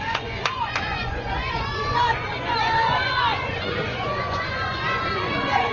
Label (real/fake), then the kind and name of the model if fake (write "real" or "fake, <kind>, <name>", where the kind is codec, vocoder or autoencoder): fake, vocoder, Vocos